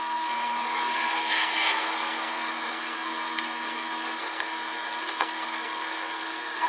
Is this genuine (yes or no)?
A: no